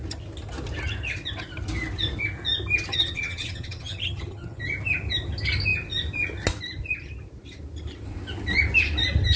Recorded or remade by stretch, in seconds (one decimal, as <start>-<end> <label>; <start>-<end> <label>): 0.0-2.9 recorded; 2.9-4.6 remade; 4.6-9.4 recorded